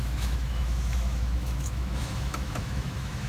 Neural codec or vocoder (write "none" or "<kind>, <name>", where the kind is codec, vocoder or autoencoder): autoencoder, DAC-VAE